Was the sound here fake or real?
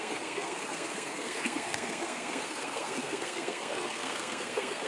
fake